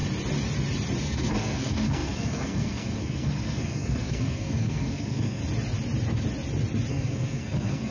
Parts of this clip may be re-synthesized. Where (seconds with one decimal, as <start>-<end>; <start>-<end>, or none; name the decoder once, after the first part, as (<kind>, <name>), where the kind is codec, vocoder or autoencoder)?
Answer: 1.0-5.4 (codec, SNAC); 6.9-7.9